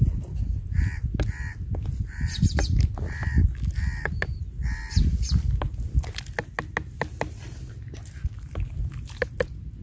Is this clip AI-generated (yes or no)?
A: no